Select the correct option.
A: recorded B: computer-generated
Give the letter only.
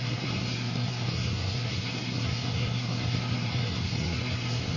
B